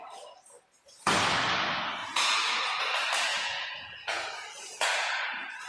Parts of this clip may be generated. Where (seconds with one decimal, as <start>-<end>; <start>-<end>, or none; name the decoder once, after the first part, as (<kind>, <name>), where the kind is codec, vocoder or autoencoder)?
2.0-2.8 (vocoder, Vocos); 3.3-5.2